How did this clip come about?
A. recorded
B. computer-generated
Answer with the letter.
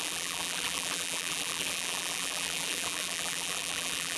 B